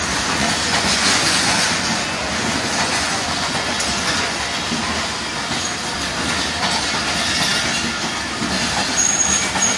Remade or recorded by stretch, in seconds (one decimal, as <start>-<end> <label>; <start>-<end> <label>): 0.0-4.6 remade; 4.6-9.8 recorded